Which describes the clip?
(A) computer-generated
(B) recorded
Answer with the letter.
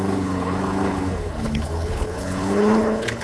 A